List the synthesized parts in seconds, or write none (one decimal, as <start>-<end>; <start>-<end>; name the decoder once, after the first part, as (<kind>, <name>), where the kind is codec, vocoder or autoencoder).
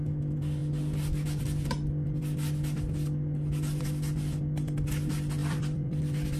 5.4-6.0 (vocoder, BigVGAN v2)